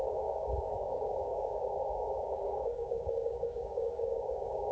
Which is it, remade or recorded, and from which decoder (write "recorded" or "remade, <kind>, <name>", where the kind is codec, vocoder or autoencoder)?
remade, codec, DAC